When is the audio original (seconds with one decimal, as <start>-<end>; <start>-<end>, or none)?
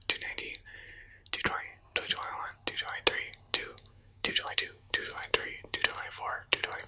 0.0-3.7; 6.5-6.9